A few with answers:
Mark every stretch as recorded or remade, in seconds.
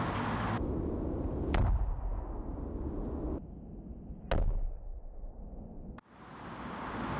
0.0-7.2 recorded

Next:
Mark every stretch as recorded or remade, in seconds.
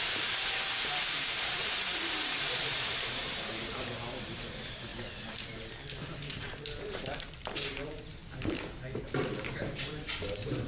0.0-4.9 remade; 4.9-6.3 recorded; 6.3-8.2 remade; 8.2-8.7 recorded; 8.7-10.7 remade